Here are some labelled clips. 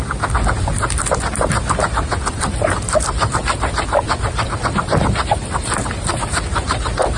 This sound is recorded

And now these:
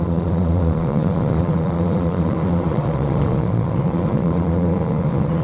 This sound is remade